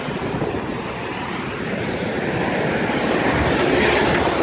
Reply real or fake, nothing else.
real